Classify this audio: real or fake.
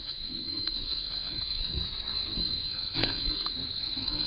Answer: fake